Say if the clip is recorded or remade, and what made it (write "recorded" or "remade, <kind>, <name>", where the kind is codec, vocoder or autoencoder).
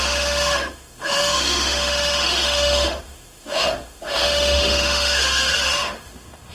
remade, autoencoder, DAC-VAE